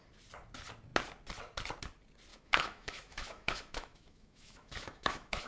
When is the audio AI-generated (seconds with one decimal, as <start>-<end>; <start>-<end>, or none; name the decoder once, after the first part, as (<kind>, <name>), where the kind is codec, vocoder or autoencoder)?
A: 2.3-5.5 (autoencoder, DAC-VAE)